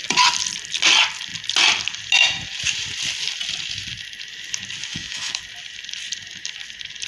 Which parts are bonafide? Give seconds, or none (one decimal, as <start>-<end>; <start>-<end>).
0.0-4.9; 5.4-7.1

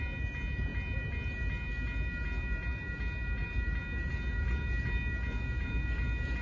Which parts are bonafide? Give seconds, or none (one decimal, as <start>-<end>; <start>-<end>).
0.0-6.4

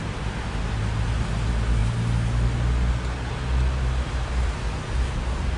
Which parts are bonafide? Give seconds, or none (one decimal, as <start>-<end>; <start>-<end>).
0.0-5.6

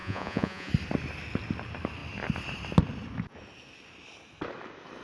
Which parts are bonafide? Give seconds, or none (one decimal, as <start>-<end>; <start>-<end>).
0.7-5.0

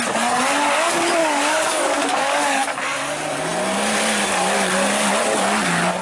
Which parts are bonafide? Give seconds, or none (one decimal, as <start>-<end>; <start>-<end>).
0.0-1.2; 2.8-6.0

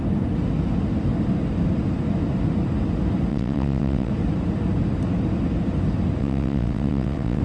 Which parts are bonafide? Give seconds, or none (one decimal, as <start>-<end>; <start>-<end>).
0.0-3.3; 4.1-6.2